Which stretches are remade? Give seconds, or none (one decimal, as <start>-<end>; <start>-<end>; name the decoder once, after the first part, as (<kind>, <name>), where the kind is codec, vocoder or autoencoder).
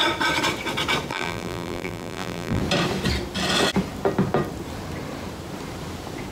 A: 1.1-2.6 (vocoder, BigVGAN v2)